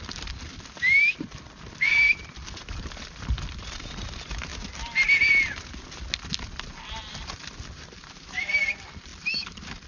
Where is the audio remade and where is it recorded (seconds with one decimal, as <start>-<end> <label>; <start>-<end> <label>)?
0.0-4.5 remade; 4.5-6.0 recorded; 6.0-9.9 remade